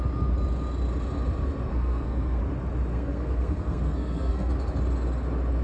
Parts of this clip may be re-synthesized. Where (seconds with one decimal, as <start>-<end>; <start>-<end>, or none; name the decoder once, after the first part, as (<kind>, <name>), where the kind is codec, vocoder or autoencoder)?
1.7-2.4 (codec, SNAC); 2.9-4.5